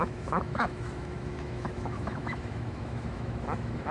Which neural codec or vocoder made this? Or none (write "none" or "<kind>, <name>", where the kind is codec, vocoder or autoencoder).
autoencoder, DAC-VAE